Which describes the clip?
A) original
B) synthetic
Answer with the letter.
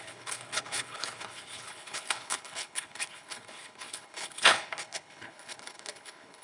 B